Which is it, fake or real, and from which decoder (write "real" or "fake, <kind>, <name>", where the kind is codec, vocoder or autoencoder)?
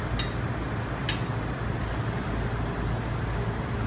real